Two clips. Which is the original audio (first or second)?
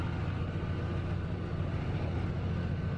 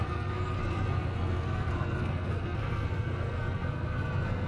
first